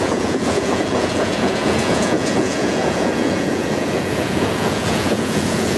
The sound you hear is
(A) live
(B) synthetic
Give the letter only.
B